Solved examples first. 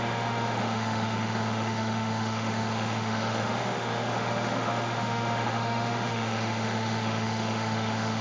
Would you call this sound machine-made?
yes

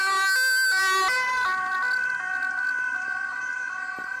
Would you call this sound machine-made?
no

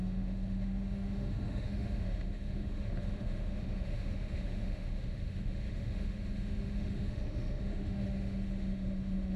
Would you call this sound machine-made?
yes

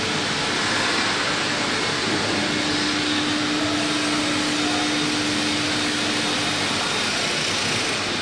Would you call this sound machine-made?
no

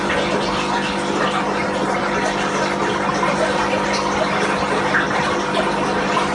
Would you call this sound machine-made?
no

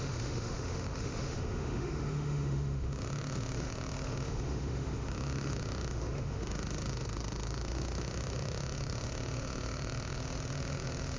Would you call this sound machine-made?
yes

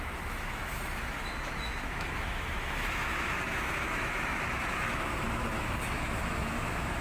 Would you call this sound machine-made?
yes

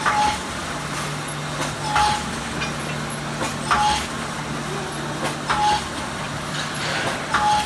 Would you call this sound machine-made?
no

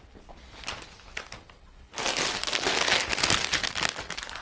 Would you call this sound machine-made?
no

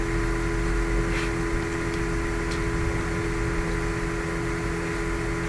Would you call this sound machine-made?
no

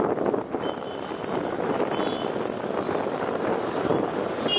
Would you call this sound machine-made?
no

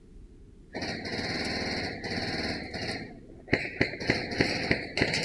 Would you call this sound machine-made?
no